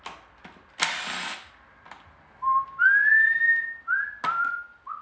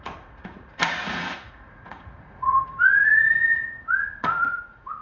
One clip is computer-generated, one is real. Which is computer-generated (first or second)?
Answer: second